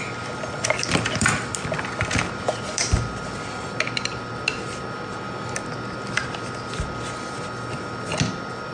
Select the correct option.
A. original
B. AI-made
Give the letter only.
A